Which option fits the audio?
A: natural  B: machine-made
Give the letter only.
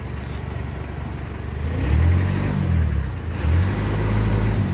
A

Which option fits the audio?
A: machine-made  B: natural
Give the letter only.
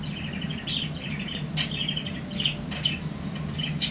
B